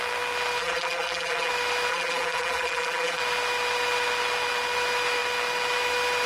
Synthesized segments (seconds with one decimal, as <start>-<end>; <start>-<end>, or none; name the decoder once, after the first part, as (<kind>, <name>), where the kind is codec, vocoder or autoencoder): 0.6-1.5 (vocoder, BigVGAN v2); 1.9-3.2